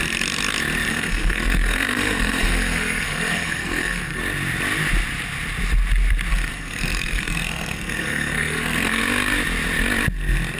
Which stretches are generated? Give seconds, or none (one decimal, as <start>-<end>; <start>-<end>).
0.9-4.2; 6.3-9.0